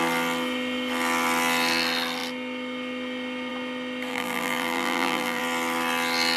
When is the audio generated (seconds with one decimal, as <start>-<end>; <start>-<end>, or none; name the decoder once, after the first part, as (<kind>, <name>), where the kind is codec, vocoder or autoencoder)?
4.1-5.4 (vocoder, BigVGAN v2)